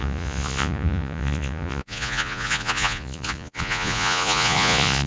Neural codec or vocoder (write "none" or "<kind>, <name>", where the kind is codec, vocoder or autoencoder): vocoder, Vocos